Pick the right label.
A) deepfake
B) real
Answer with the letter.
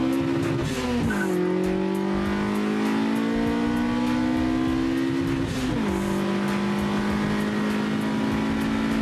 B